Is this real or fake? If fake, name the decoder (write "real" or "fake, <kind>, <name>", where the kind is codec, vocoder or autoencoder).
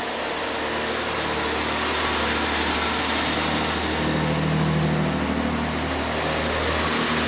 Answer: real